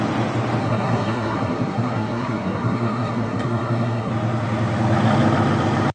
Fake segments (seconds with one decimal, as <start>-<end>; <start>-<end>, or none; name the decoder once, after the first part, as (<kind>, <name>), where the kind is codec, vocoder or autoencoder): 0.6-4.1 (codec, SNAC)